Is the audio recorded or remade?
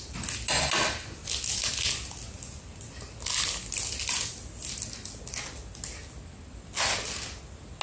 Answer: recorded